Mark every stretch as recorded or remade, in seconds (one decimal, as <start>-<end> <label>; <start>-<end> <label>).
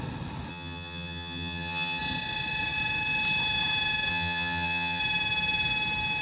0.0-0.5 recorded; 0.5-2.0 remade; 2.0-4.1 recorded; 4.1-5.0 remade; 5.0-6.2 recorded